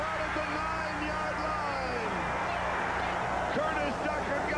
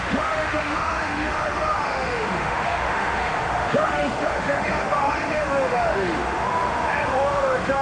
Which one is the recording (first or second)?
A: first